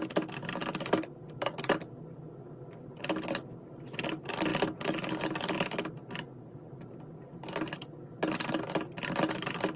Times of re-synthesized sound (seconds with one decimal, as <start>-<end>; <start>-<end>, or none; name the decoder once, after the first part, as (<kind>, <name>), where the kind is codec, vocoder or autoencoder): none